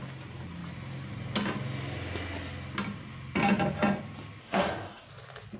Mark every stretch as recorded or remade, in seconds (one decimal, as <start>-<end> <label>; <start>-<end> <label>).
0.0-4.4 recorded; 4.4-5.1 remade; 5.1-5.6 recorded